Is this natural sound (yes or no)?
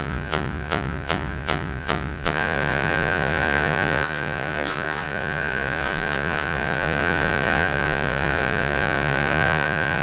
no